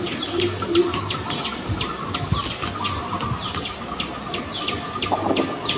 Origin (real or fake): real